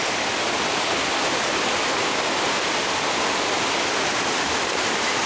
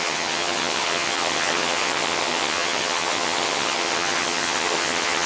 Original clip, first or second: first